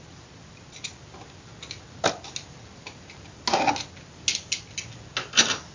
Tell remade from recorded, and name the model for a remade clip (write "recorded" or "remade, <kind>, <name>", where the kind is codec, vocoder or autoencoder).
recorded